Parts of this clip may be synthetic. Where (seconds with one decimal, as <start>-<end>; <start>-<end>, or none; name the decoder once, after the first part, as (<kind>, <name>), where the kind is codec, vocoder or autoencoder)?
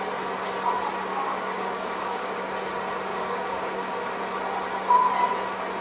1.1-2.4 (codec, DAC); 3.1-4.1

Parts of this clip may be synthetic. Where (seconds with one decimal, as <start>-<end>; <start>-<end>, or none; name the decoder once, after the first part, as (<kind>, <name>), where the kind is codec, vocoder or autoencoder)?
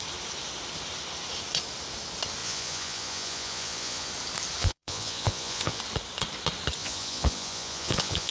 2.4-4.1 (vocoder, Vocos); 4.6-5.8; 6.8-8.3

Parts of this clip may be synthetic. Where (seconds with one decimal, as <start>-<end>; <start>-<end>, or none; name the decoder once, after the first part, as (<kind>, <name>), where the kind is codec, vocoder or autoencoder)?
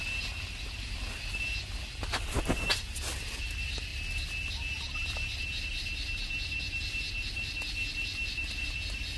none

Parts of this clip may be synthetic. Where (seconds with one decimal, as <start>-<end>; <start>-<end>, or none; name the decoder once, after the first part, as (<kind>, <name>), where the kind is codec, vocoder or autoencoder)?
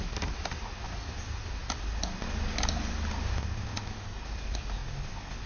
none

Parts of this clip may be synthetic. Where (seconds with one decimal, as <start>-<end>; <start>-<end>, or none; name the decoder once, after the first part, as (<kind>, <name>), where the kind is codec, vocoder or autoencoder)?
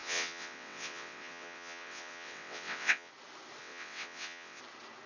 0.0-3.1 (vocoder, WaveNeXt); 3.6-4.6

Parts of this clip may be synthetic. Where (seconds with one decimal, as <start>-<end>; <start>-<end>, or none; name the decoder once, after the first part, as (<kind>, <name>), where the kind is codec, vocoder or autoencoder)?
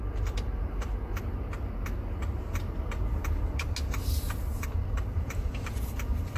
0.0-1.1 (vocoder, BigVGAN v2); 4.9-6.4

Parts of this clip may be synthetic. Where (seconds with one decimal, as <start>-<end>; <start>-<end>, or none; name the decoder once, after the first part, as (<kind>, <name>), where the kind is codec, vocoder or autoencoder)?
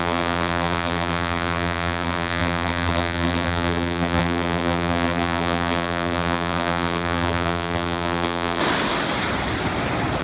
0.0-8.6 (vocoder, BigVGAN v2)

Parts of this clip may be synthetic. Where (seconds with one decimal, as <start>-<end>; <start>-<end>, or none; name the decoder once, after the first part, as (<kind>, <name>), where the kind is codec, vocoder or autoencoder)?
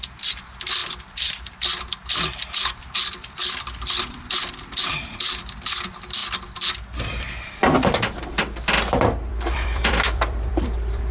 0.0-6.2 (vocoder, BigVGAN v2); 9.3-11.1